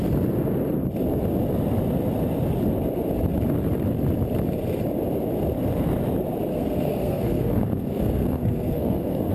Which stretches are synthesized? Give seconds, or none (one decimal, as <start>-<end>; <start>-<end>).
6.5-9.3